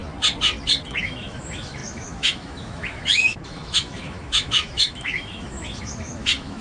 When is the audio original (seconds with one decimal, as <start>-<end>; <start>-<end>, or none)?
0.0-1.0